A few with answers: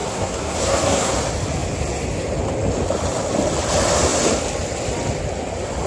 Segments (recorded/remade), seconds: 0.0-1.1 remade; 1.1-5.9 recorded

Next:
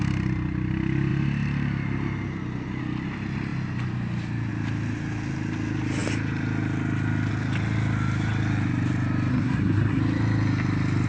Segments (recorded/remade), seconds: 0.0-9.3 recorded; 9.3-10.0 remade; 10.0-11.1 recorded

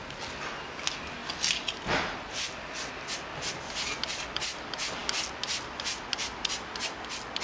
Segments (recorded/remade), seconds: 0.0-7.4 recorded

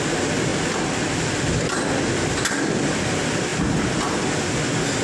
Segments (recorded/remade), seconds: 0.0-5.0 recorded

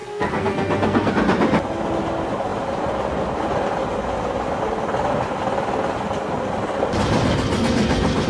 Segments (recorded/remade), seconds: 0.0-1.1 remade; 1.1-8.3 recorded

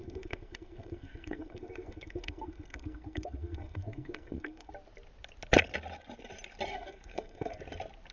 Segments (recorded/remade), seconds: 0.0-4.7 remade; 4.7-6.7 recorded; 6.7-7.6 remade; 7.6-8.1 recorded

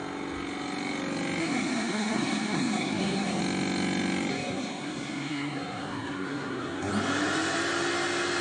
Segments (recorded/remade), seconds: 0.0-1.4 recorded; 1.4-3.4 remade; 3.4-4.3 recorded; 4.3-6.9 remade; 6.9-8.4 recorded

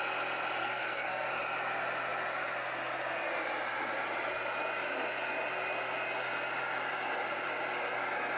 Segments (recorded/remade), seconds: 0.0-0.6 recorded; 0.6-1.3 remade; 1.3-8.4 recorded